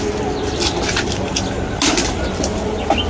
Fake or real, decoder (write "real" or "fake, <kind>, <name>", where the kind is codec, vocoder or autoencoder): real